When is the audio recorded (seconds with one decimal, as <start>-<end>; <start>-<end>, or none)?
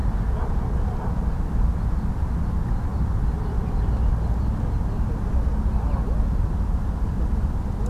0.0-7.9